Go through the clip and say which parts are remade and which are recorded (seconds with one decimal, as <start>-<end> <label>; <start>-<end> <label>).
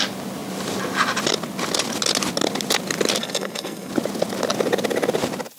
0.0-3.2 recorded; 3.2-3.9 remade; 3.9-5.6 recorded